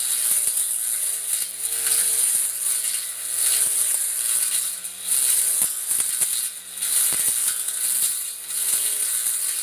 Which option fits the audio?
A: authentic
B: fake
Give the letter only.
A